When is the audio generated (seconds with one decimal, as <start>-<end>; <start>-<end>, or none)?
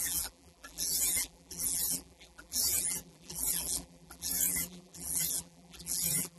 0.0-6.4